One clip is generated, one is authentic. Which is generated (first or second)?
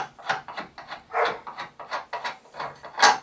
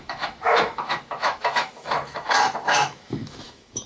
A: second